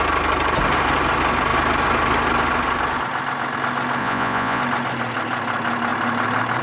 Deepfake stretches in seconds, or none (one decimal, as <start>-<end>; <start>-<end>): 4.0-4.6